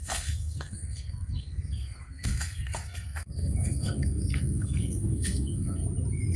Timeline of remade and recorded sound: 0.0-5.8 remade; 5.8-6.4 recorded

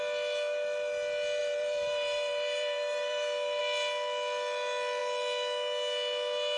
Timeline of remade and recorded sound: 0.0-1.4 recorded; 1.4-3.6 remade; 3.6-6.6 recorded

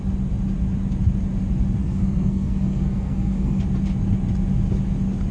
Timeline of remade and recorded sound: 0.0-1.8 recorded; 1.8-3.6 remade; 3.6-5.3 recorded

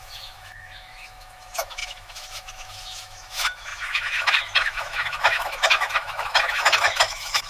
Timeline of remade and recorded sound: 0.0-7.5 remade

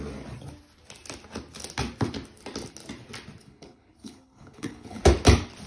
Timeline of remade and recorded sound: 0.0-3.4 recorded; 3.4-5.0 remade; 5.0-5.7 recorded